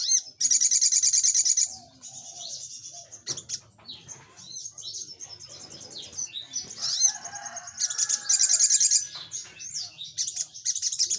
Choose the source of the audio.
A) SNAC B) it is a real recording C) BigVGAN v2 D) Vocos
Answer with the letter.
B